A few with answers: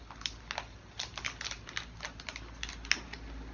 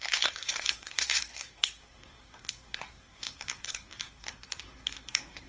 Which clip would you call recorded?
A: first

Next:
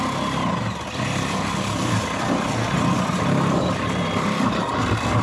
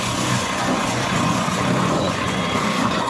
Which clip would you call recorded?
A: first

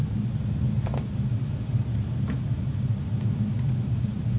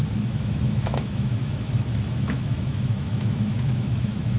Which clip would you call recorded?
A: first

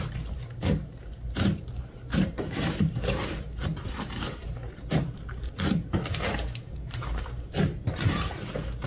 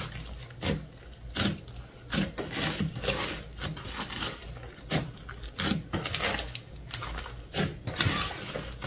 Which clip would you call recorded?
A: second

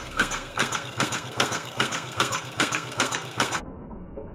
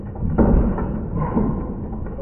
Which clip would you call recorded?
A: second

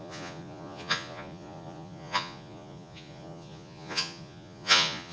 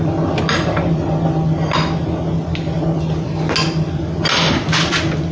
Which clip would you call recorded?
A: second